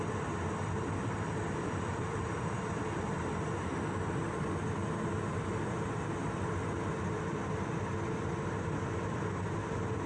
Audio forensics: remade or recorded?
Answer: recorded